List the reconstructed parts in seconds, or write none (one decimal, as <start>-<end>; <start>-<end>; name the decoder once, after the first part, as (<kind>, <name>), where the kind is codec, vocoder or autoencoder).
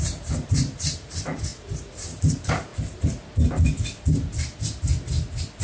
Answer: 0.0-2.7 (vocoder, BigVGAN v2)